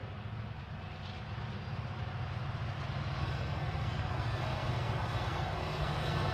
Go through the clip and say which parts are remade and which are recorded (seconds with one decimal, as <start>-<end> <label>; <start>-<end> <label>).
0.0-3.2 recorded; 3.2-6.3 remade